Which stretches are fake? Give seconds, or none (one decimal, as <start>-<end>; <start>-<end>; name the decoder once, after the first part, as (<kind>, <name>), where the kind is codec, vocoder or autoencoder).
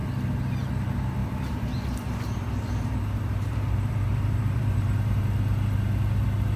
1.2-5.2 (vocoder, BigVGAN v2)